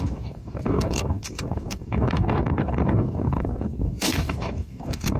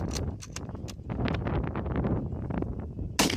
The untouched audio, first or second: second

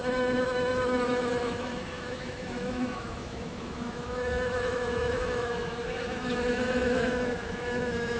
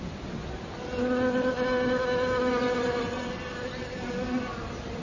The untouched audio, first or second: second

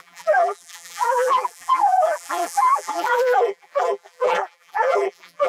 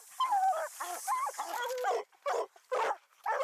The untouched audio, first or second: second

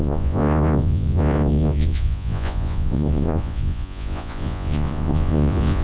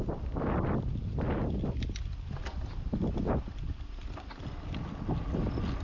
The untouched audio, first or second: second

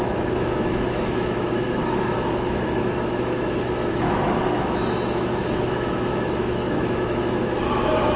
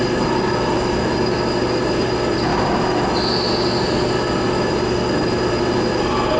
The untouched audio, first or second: second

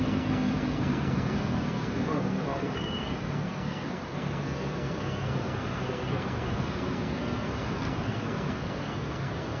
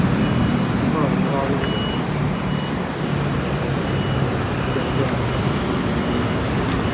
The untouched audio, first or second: second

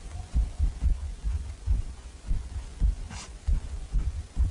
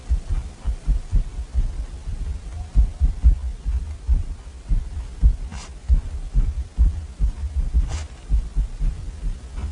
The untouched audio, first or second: second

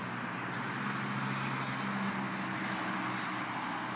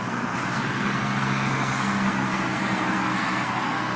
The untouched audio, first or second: first